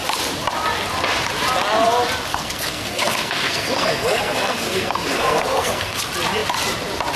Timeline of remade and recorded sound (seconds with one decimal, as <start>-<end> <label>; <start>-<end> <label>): 0.0-2.3 recorded; 2.3-6.0 remade; 6.0-7.2 recorded